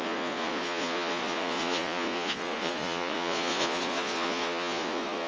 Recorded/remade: remade